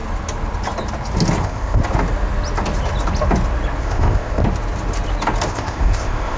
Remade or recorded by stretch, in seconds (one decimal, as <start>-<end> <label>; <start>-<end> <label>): 0.0-1.4 recorded; 1.4-1.8 remade; 1.8-3.8 recorded; 3.8-4.4 remade; 4.4-5.5 recorded; 5.5-6.4 remade